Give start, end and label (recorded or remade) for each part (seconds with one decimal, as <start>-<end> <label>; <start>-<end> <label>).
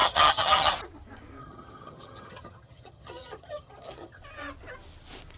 0.0-0.7 remade; 0.7-1.4 recorded; 1.4-4.2 remade; 4.2-5.4 recorded